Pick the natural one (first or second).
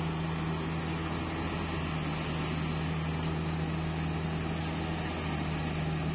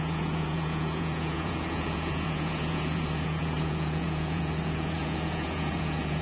first